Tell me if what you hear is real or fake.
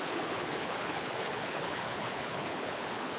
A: fake